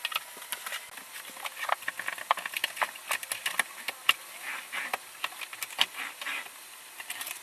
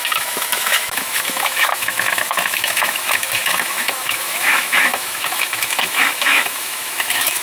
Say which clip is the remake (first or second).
second